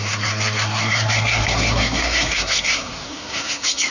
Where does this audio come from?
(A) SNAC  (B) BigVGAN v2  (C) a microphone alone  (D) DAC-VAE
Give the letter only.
A